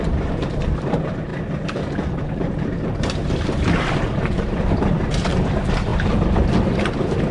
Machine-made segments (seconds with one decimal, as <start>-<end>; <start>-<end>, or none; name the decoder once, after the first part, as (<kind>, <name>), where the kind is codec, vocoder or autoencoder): 0.0-1.3 (vocoder, BigVGAN v2); 2.2-5.9